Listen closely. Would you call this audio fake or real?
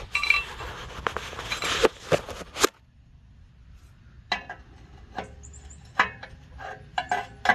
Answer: real